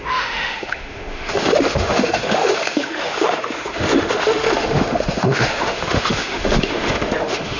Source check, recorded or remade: remade